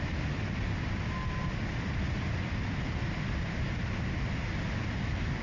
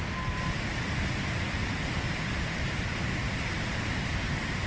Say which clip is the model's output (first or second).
second